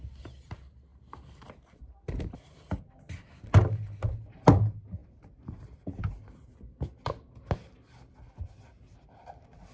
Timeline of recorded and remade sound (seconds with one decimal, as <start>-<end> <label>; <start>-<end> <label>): 0.0-9.7 recorded